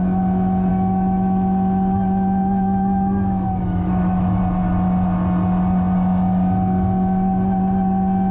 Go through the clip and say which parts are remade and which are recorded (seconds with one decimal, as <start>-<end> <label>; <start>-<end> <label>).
0.0-0.7 recorded; 0.7-4.4 remade; 4.4-8.3 recorded